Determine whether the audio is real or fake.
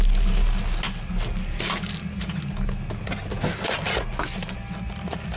real